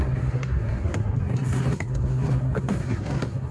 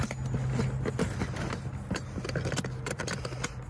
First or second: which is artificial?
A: first